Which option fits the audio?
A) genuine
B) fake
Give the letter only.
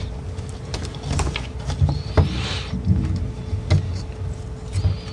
A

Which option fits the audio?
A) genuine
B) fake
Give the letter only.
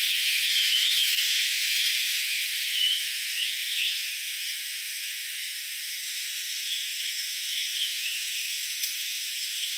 B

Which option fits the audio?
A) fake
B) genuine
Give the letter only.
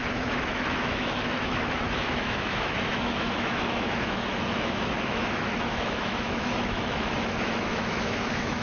A